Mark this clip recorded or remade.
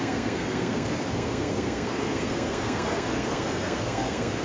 remade